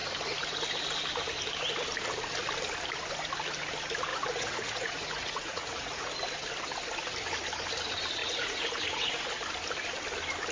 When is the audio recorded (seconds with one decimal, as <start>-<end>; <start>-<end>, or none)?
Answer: 0.0-4.1; 6.1-8.2; 9.1-10.5